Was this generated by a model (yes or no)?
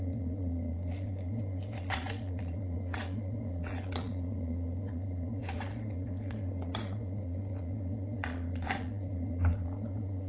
yes